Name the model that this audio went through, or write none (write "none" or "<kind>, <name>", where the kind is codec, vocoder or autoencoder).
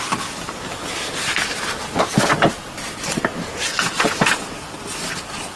none